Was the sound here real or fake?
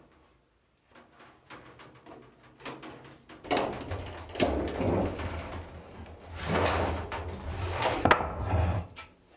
real